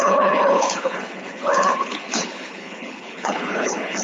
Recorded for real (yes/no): no